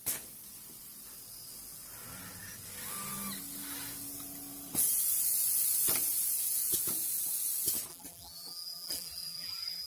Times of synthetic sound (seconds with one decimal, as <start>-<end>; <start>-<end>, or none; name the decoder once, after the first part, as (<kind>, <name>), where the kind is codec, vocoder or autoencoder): 7.9-9.9 (vocoder, BigVGAN v2)